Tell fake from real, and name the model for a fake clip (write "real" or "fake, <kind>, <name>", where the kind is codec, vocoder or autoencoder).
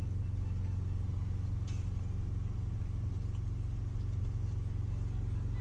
real